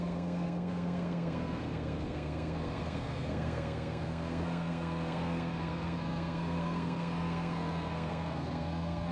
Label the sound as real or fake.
fake